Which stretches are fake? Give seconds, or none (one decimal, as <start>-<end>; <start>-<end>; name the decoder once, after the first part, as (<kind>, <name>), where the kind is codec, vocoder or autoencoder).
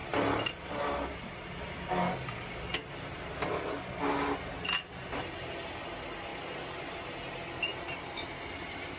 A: 6.3-7.0 (vocoder, BigVGAN v2)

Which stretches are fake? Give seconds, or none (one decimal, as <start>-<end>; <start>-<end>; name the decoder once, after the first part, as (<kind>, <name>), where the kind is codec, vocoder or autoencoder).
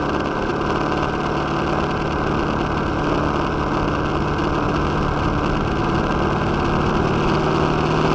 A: none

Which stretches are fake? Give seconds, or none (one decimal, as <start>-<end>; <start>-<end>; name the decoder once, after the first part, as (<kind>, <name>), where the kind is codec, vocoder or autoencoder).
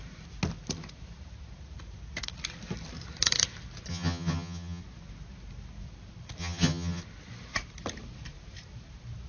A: 3.9-4.8 (vocoder, HiFi-GAN); 6.4-7.0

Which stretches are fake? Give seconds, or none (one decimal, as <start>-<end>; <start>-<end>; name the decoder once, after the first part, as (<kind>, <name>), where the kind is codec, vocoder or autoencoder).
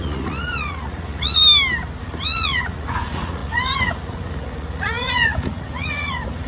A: 0.0-1.4 (vocoder, Vocos); 2.0-6.5